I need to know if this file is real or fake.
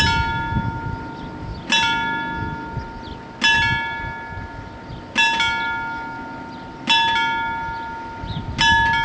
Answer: real